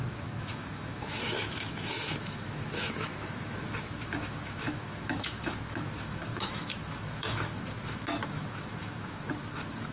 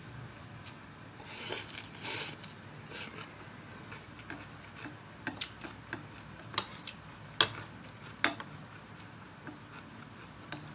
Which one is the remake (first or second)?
first